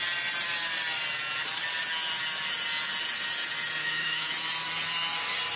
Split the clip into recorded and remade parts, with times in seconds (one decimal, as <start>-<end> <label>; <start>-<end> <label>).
0.0-3.8 recorded; 3.8-4.3 remade; 4.3-5.6 recorded